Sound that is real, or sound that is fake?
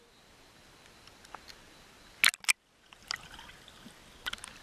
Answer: real